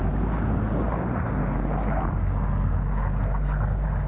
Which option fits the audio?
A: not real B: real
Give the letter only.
B